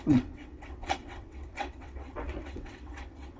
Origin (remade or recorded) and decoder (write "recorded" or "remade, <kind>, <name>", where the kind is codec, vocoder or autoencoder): remade, vocoder, WaveNeXt